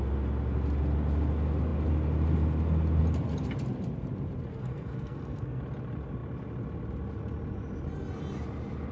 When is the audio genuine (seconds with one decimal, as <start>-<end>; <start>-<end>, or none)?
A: 0.0-4.5; 5.6-8.9